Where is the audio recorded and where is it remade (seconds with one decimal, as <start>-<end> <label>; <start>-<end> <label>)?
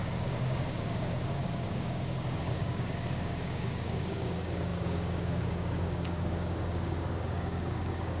0.0-8.2 remade